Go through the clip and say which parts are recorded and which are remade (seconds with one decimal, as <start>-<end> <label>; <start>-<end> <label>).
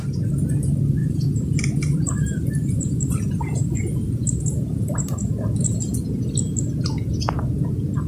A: 0.0-1.0 recorded; 1.0-5.8 remade; 5.8-8.1 recorded